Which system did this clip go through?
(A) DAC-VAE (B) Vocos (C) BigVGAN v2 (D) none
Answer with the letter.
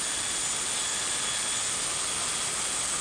D